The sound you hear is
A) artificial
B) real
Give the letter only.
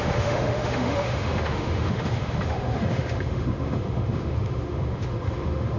A